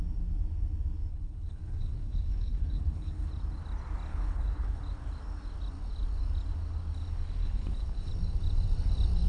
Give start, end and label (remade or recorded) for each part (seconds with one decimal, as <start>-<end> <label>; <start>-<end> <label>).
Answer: 0.0-1.1 recorded; 1.1-3.3 remade; 3.3-4.1 recorded; 4.1-4.8 remade; 4.8-7.4 recorded; 7.4-8.1 remade; 8.1-9.3 recorded